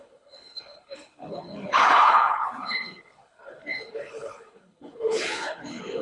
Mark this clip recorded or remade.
remade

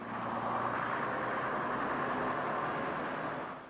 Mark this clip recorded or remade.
recorded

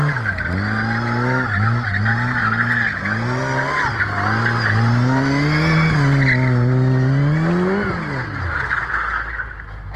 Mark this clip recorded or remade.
recorded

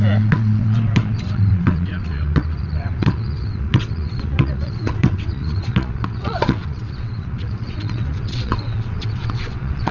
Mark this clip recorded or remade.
remade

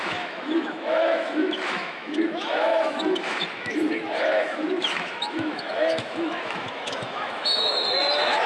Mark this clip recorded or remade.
remade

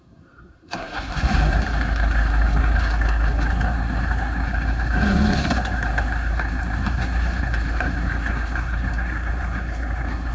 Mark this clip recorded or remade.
remade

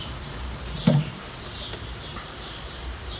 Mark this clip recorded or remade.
remade